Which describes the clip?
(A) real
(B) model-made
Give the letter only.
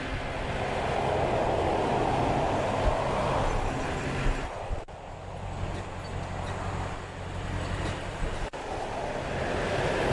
A